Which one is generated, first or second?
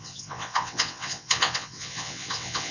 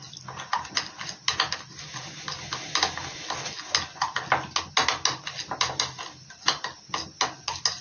first